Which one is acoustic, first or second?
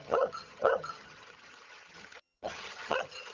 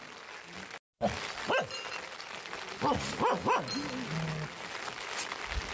second